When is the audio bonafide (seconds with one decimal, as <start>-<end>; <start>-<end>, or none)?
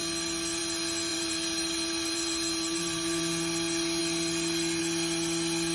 0.0-1.1; 3.2-5.7